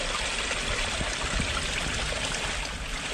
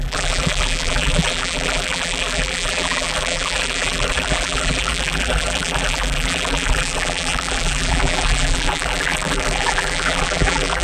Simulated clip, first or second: second